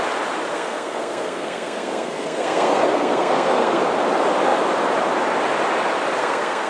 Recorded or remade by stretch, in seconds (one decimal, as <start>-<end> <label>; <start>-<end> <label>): 0.0-0.5 recorded; 0.5-3.8 remade; 3.8-6.2 recorded; 6.2-6.7 remade